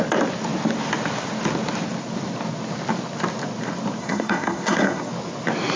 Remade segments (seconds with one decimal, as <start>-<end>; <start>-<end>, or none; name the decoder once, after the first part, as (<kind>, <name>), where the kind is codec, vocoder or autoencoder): 4.0-5.1 (codec, SNAC)

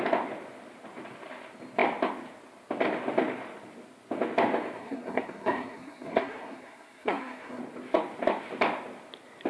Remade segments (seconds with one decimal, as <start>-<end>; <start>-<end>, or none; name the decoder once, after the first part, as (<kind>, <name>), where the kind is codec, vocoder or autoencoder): 4.8-7.6 (codec, SNAC)

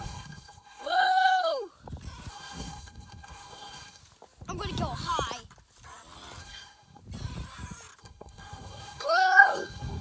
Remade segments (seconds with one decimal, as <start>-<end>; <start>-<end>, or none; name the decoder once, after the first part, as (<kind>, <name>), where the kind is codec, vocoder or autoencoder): 0.0-1.7 (codec, SNAC); 2.3-4.0; 6.4-7.0; 8.0-10.0

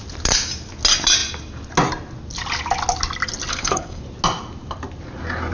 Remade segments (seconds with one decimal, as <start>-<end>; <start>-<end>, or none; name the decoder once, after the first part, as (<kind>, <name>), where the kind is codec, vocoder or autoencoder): 3.5-4.0 (codec, SNAC)

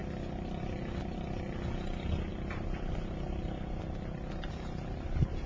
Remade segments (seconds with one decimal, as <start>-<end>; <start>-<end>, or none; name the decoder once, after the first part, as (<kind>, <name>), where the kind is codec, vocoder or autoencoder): none

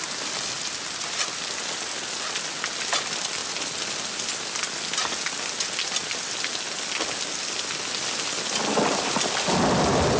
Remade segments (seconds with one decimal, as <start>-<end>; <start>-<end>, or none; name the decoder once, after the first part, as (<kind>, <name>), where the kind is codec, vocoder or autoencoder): none